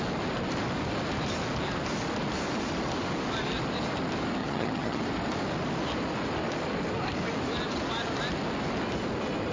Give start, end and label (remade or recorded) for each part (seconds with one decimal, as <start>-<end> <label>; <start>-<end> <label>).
0.0-4.4 recorded; 4.4-5.0 remade; 5.0-9.5 recorded

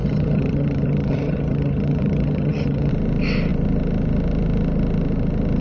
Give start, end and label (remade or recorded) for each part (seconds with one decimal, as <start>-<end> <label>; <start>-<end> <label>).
0.0-2.9 remade; 2.9-5.6 recorded

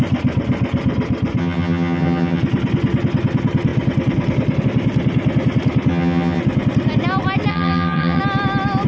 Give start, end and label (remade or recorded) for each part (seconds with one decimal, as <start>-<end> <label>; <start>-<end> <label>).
0.0-1.4 recorded; 1.4-2.4 remade; 2.4-5.9 recorded; 5.9-6.4 remade; 6.4-7.5 recorded; 7.5-8.2 remade; 8.2-8.9 recorded

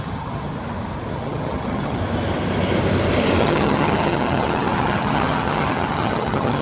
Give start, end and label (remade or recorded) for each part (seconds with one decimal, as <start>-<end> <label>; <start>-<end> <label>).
0.0-0.5 remade; 0.5-1.1 recorded; 1.1-2.0 remade; 2.0-3.4 recorded; 3.4-6.6 remade